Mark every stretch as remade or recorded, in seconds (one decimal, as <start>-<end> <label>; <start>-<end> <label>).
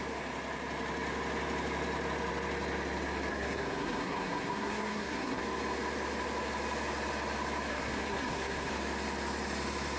0.0-3.3 recorded; 3.3-5.4 remade; 5.4-7.7 recorded; 7.7-8.7 remade; 8.7-10.0 recorded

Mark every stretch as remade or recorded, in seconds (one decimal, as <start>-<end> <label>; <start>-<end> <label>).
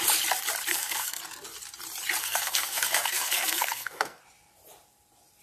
0.0-0.7 recorded; 0.7-1.2 remade; 1.2-2.2 recorded; 2.2-4.2 remade; 4.2-5.4 recorded